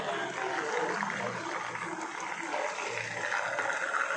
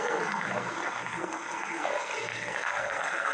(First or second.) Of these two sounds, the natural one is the first